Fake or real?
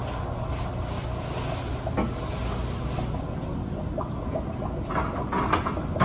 real